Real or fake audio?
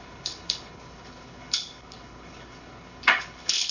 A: fake